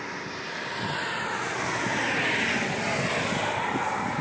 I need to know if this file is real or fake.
real